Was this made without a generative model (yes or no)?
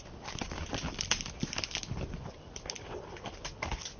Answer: yes